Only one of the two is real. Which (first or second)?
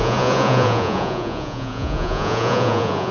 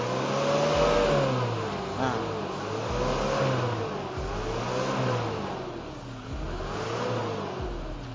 second